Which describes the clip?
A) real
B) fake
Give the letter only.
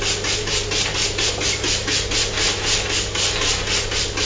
A